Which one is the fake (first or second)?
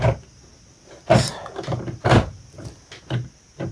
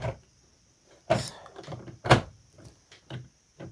second